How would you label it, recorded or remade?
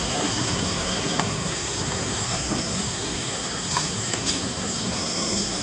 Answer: remade